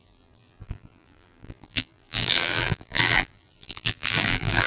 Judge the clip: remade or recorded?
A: remade